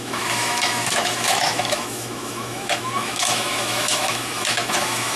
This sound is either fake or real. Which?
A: fake